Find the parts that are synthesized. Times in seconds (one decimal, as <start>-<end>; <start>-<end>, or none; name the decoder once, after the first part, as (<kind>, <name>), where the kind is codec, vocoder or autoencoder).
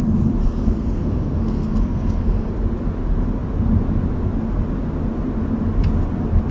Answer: 0.4-2.5 (codec, SNAC)